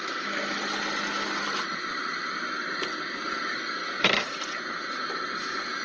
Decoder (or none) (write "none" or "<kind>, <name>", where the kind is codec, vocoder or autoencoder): none